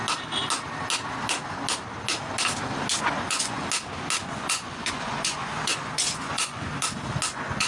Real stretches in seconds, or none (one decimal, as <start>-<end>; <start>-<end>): 0.0-3.0; 3.6-4.2; 6.7-7.3

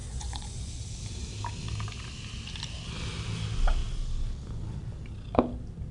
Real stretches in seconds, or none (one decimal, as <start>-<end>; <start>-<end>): 0.7-5.9

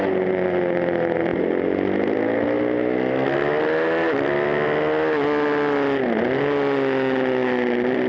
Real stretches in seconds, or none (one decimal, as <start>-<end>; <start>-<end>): 0.0-8.1